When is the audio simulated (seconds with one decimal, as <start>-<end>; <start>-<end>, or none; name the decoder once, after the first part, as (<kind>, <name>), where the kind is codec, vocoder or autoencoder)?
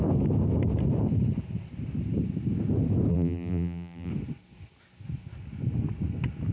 3.1-4.1 (vocoder, BigVGAN v2)